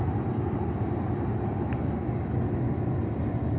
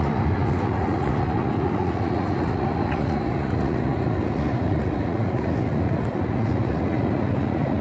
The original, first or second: first